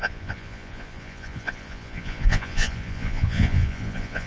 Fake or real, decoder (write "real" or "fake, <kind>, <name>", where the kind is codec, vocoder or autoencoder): fake, vocoder, Vocos